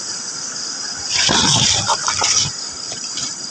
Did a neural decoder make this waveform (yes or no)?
yes